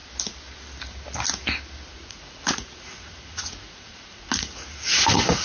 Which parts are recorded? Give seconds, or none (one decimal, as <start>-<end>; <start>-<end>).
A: 0.0-1.9